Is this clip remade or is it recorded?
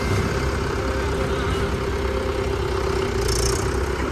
recorded